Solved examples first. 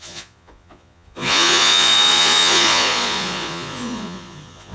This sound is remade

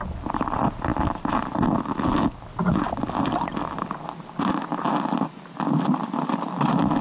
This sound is recorded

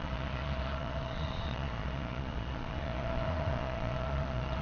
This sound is remade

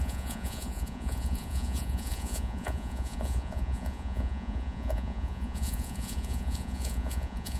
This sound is remade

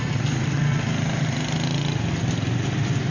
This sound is recorded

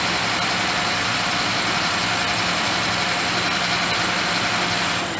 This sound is recorded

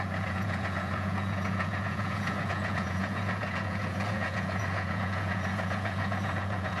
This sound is remade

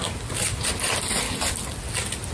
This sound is recorded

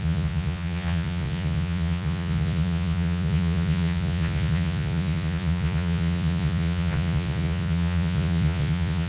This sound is remade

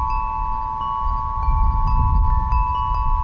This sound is recorded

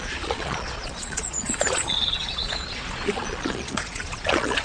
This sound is remade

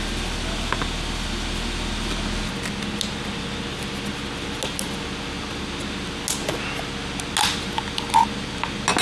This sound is recorded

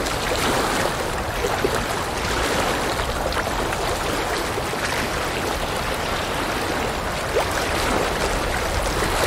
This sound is recorded